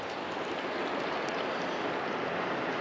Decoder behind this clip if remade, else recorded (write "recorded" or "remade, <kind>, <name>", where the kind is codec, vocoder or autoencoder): recorded